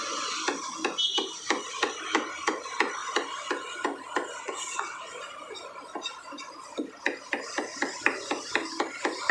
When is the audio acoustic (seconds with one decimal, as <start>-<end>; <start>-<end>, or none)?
0.0-4.4; 5.1-9.3